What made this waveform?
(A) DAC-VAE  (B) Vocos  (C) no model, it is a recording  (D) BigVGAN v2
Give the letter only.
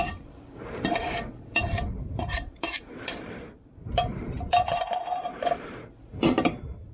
D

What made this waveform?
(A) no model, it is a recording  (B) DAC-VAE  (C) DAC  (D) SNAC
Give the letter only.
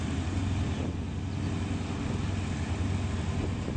A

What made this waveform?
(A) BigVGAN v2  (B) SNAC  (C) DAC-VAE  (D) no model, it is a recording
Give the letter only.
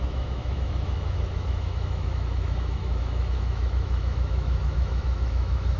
C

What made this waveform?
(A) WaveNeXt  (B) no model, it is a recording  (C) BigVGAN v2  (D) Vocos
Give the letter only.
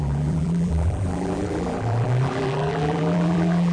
C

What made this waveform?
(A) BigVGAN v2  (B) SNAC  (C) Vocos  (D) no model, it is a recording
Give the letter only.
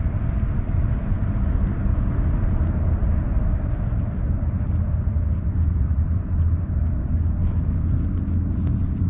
D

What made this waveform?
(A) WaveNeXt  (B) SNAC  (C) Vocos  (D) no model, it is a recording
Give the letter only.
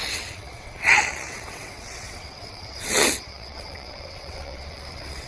A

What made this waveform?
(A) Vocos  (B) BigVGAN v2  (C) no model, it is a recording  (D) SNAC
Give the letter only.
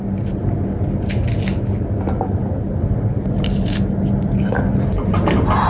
C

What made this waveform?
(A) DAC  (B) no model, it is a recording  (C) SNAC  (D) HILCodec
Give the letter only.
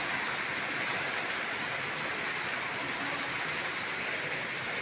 B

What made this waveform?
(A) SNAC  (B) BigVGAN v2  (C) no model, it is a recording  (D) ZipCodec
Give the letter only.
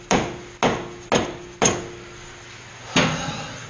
C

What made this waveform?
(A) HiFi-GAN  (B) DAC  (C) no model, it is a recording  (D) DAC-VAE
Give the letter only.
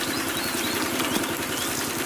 C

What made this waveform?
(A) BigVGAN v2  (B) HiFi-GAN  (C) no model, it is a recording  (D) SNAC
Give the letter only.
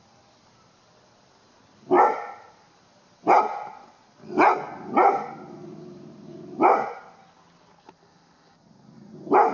C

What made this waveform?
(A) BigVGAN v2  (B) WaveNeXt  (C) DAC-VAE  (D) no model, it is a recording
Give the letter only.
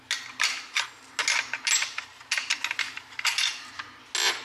D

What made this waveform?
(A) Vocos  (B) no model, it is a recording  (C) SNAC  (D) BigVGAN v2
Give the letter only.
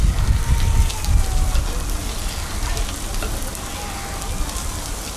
B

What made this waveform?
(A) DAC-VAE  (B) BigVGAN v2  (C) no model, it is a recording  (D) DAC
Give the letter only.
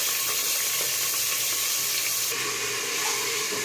C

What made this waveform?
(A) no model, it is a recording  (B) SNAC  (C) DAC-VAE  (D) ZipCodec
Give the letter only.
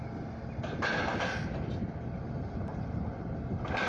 A